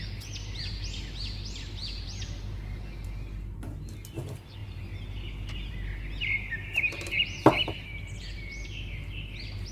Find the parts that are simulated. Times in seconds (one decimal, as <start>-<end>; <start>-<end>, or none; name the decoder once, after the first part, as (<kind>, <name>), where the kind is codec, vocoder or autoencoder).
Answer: none